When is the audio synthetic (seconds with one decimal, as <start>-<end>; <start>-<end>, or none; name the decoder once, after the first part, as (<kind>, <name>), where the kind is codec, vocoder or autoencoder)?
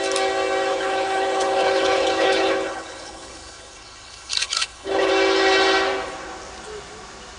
0.7-5.1 (codec, HILCodec)